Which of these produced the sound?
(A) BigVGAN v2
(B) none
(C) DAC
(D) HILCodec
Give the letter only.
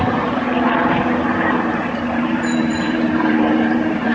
A